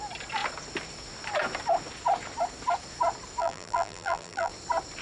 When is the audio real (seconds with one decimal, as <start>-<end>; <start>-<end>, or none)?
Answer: 0.0-3.4; 4.5-5.0